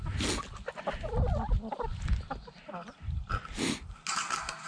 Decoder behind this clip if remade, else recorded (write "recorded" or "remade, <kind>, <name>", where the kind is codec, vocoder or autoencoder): recorded